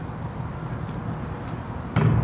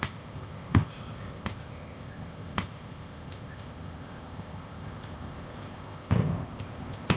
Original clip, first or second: first